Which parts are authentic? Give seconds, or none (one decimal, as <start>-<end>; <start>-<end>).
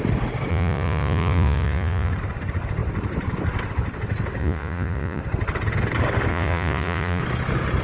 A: 0.0-0.5; 2.1-4.4; 5.2-6.3; 7.2-7.8